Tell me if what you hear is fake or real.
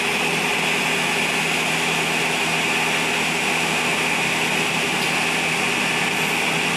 real